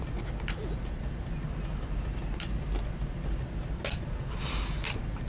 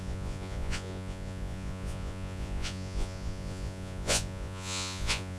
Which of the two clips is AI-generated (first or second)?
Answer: second